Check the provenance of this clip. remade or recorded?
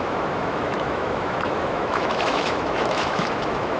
remade